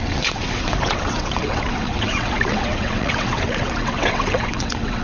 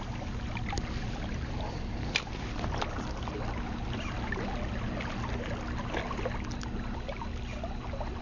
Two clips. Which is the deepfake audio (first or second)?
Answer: first